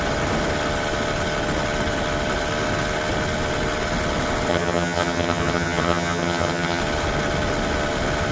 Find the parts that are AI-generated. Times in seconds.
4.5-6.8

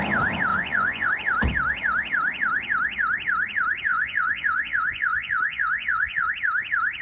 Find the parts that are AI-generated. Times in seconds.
0.5-1.1; 3.9-6.3